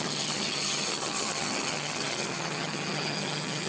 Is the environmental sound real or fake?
fake